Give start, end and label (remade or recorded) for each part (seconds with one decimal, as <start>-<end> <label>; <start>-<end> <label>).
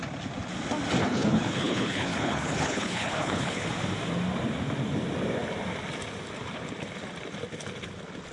0.0-1.0 recorded; 1.0-3.7 remade; 3.7-8.3 recorded